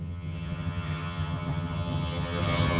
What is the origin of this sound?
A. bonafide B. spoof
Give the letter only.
B